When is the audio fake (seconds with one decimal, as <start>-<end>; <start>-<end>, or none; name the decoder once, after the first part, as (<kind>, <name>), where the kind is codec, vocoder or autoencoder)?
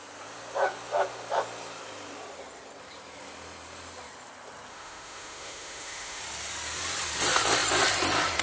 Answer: 4.7-6.2 (autoencoder, DAC-VAE)